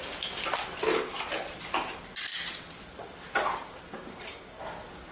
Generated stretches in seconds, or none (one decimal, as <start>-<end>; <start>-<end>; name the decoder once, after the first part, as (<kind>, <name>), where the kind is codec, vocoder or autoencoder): 2.3-4.6 (vocoder, BigVGAN v2)